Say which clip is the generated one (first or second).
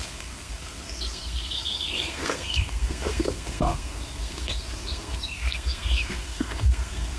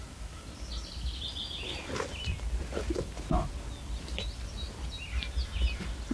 first